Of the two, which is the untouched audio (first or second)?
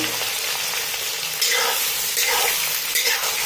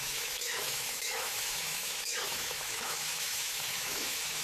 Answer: first